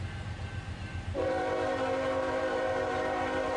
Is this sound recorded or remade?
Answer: remade